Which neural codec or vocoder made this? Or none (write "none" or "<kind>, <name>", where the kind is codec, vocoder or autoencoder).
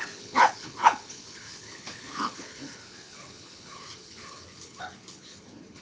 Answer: codec, HILCodec